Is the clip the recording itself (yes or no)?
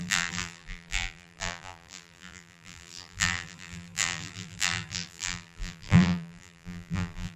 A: no